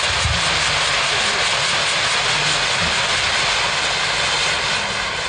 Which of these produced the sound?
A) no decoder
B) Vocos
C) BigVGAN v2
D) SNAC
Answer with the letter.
A